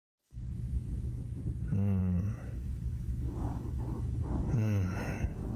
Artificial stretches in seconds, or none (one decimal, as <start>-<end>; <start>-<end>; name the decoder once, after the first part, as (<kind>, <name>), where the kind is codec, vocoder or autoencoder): 0.0-1.4 (codec, DAC); 2.0-5.6